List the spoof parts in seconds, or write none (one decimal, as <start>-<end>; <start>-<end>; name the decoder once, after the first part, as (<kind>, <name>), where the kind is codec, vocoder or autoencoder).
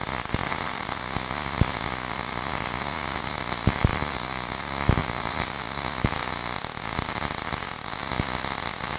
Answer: 3.9-4.5 (vocoder, BigVGAN v2); 5.0-5.6